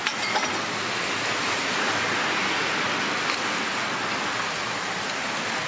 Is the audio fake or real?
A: real